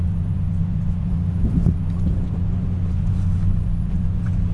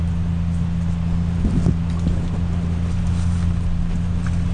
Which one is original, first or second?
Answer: second